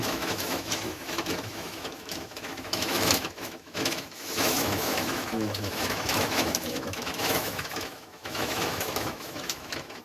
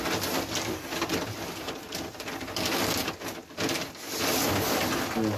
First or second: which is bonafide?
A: second